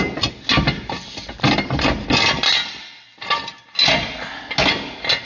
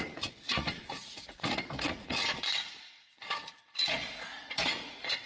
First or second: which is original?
first